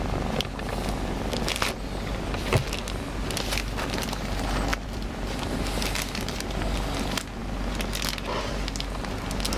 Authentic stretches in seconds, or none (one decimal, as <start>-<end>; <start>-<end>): 0.0-4.7; 5.4-9.6